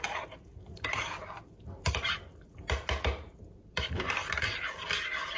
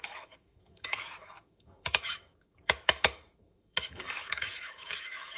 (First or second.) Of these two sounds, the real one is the first